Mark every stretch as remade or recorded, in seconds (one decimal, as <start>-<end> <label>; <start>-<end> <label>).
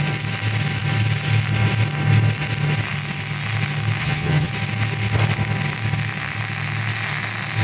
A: 0.0-4.0 recorded; 4.0-4.5 remade; 4.5-7.6 recorded